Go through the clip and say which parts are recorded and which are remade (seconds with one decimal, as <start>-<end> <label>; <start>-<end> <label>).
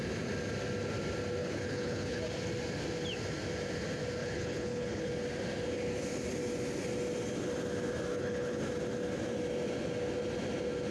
0.0-1.4 recorded; 1.4-2.2 remade; 2.2-4.2 recorded; 4.2-5.1 remade; 5.1-8.1 recorded; 8.1-8.6 remade; 8.6-10.9 recorded